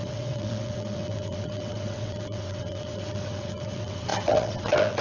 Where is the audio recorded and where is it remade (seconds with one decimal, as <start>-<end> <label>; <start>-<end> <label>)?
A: 0.0-5.0 remade